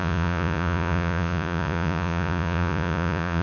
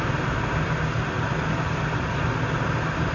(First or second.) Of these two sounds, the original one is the second